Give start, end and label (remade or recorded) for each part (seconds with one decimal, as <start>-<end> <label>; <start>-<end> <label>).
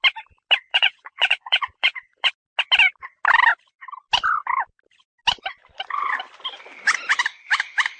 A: 0.0-0.7 recorded; 0.7-2.3 remade; 2.3-8.0 recorded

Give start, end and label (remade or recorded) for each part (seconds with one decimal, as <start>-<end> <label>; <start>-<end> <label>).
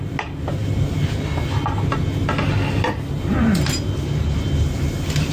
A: 0.0-5.3 recorded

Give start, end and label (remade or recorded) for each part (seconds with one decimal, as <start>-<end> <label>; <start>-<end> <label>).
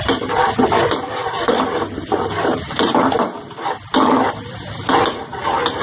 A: 0.0-5.8 remade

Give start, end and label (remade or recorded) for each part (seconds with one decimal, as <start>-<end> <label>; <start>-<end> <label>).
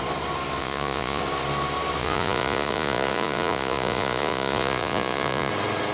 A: 0.0-0.6 recorded; 0.6-1.2 remade; 1.2-2.0 recorded; 2.0-5.5 remade; 5.5-5.9 recorded